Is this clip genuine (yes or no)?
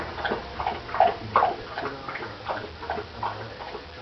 yes